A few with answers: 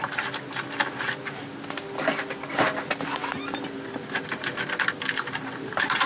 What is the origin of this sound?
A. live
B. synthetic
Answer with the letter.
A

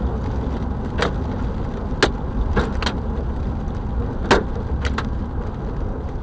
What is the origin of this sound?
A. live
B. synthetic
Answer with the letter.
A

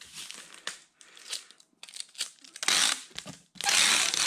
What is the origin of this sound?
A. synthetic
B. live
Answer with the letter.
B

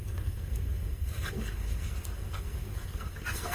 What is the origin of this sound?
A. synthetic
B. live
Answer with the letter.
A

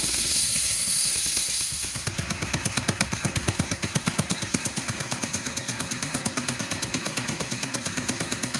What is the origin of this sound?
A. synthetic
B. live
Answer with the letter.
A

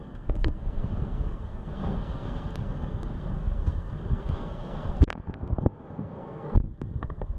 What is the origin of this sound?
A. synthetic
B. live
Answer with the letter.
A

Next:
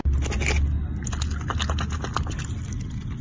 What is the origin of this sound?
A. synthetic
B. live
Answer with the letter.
B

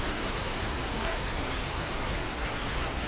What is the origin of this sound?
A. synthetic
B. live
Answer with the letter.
A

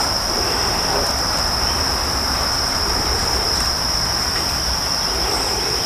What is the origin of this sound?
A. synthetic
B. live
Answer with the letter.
B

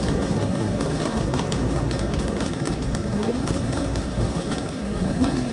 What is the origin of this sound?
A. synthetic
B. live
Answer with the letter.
A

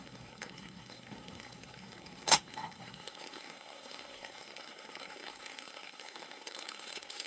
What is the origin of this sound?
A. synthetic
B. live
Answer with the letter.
A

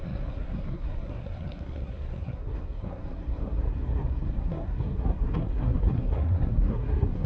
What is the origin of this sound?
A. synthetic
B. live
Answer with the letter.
A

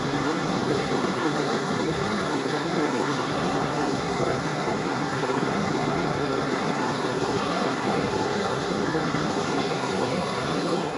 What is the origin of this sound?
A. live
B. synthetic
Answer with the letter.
B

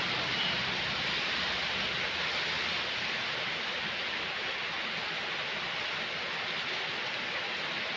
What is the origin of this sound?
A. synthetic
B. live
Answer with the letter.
B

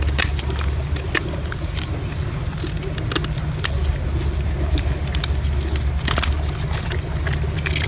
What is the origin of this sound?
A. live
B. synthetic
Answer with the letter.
A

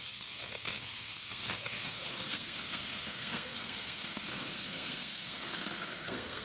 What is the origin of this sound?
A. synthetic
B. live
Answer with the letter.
A